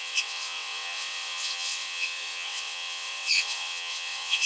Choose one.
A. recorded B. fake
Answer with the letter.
B